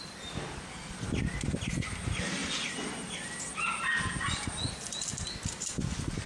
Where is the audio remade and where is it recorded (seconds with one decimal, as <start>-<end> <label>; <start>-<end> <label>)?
0.0-6.3 recorded